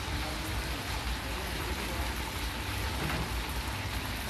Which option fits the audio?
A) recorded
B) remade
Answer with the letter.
A